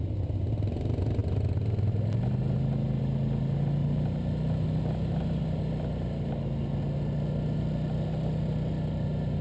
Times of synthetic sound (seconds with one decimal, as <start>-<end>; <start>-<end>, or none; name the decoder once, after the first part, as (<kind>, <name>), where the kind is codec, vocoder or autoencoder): none